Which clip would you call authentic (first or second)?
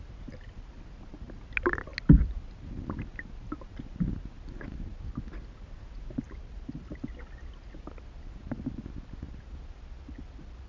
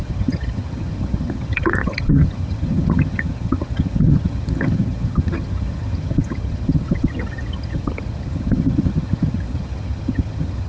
first